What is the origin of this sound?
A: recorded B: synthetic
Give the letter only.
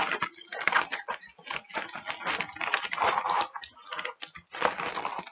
A